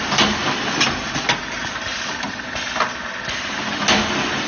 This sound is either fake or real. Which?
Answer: real